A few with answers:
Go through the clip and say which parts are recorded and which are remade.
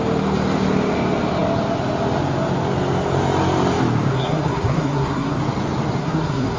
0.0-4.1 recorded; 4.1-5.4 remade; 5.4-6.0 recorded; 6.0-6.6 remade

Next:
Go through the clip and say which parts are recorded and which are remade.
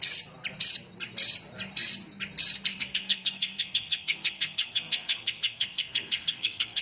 0.0-2.7 recorded; 2.7-6.8 remade